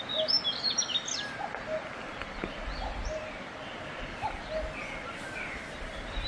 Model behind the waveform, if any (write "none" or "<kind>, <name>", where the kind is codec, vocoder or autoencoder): none